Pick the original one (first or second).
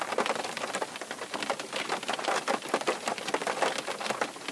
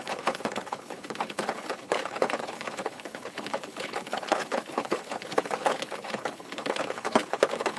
first